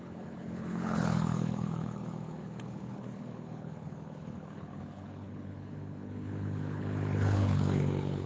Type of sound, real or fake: fake